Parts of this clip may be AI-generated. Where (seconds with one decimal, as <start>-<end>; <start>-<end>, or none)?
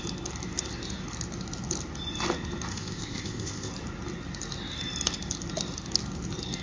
2.7-3.7